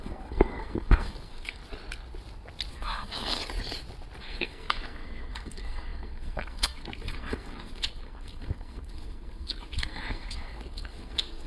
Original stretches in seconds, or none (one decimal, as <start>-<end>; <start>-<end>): 1.6-2.7; 3.4-4.2